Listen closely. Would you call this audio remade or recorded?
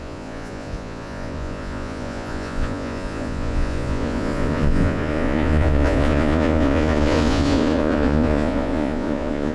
remade